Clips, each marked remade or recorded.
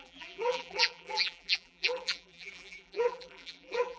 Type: remade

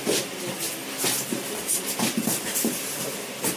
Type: recorded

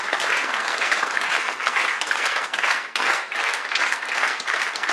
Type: remade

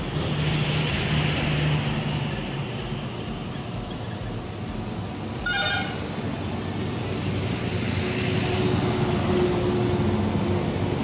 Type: recorded